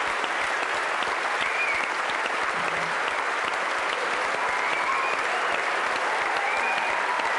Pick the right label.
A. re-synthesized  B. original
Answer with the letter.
B